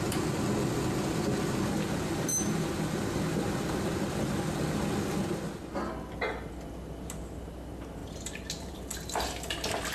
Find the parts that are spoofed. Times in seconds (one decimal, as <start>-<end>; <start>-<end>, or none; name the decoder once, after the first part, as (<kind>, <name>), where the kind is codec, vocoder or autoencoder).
none